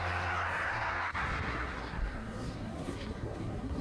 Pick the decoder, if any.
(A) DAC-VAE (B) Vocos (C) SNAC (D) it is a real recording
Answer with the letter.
C